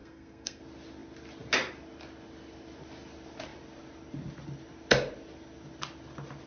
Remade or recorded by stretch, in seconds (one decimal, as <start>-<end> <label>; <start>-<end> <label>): 0.0-0.6 remade; 0.6-6.5 recorded